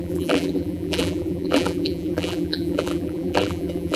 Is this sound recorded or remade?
remade